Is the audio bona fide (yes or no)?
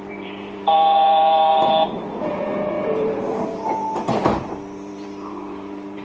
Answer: no